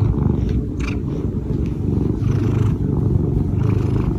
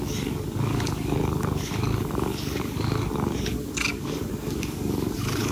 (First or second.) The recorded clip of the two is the first